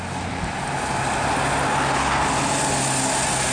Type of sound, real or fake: real